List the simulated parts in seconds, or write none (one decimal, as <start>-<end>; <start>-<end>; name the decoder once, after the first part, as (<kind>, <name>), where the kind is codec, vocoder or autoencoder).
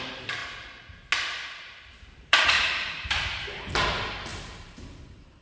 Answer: 0.0-0.4 (vocoder, BigVGAN v2); 2.1-5.4